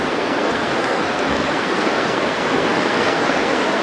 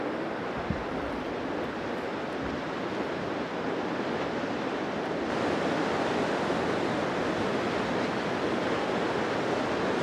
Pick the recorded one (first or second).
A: second